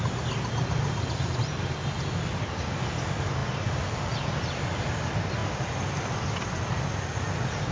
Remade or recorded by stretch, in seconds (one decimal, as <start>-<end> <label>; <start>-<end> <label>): 0.0-7.7 recorded